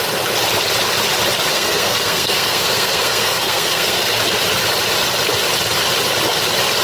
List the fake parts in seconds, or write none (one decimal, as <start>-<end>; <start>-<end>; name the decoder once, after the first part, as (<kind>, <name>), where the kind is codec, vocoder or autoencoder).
1.5-4.2 (codec, SNAC)